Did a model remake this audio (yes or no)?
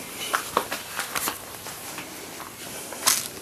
no